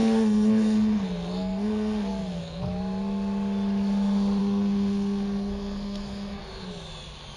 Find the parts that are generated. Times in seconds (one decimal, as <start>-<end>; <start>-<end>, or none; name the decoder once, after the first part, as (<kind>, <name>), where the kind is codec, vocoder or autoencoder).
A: 0.0-2.6 (codec, SNAC); 4.4-6.4

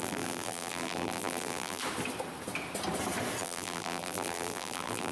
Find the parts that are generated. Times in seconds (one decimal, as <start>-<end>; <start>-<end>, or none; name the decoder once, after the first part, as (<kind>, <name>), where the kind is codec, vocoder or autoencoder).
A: 0.0-1.8 (vocoder, BigVGAN v2); 3.4-5.1

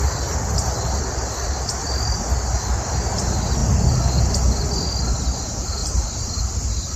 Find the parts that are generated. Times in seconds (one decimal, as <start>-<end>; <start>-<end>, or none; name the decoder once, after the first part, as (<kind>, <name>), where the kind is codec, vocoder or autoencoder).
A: 5.8-7.0 (vocoder, BigVGAN v2)

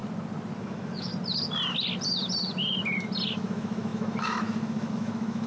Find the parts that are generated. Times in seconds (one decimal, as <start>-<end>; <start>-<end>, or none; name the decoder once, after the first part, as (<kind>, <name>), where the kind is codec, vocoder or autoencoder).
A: 0.6-1.1 (autoencoder, DAC-VAE); 3.3-5.5

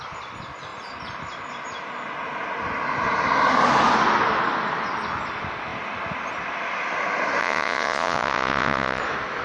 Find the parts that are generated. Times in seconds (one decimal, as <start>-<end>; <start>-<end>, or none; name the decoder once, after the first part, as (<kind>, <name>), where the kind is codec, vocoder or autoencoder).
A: 7.4-9.0 (vocoder, Vocos)